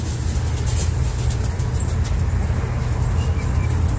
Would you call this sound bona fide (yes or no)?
yes